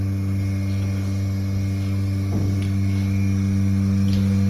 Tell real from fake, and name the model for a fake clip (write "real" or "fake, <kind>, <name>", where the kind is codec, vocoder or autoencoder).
real